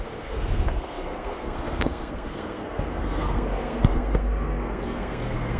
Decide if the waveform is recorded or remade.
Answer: remade